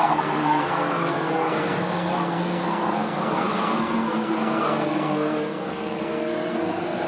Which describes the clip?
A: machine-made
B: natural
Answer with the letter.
A